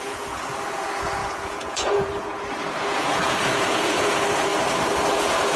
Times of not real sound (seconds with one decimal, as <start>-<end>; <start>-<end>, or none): 0.0-4.5; 5.1-5.6